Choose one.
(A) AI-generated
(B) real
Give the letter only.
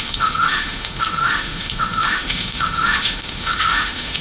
A